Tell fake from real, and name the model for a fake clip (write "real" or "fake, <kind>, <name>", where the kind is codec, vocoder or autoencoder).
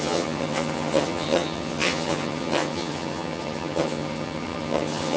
fake, vocoder, HiFi-GAN